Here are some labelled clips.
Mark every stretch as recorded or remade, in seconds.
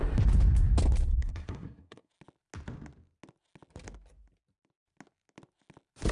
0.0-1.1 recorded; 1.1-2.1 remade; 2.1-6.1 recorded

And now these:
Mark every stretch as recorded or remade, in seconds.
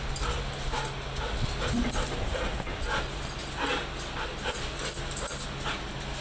0.0-6.2 recorded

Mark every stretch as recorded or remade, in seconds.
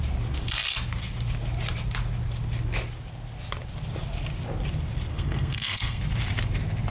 0.0-5.1 recorded; 5.1-6.0 remade; 6.0-6.9 recorded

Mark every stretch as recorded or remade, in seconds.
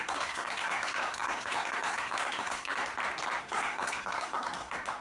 0.0-2.9 remade; 2.9-3.4 recorded; 3.4-5.0 remade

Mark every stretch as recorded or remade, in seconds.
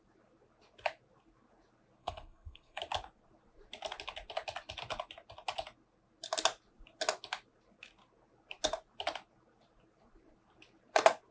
0.0-2.0 recorded; 2.0-2.8 remade; 2.8-11.3 recorded